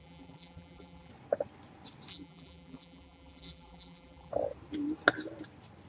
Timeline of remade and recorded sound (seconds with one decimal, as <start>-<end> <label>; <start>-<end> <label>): 0.0-1.1 remade; 1.1-2.1 recorded; 2.1-4.3 remade; 4.3-5.9 recorded